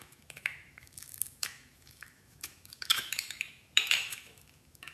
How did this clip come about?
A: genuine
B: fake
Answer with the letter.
B